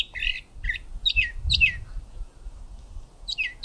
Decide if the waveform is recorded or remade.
recorded